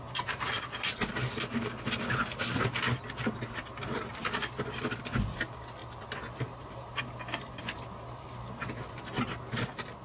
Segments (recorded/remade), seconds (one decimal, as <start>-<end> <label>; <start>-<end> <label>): 0.0-10.0 recorded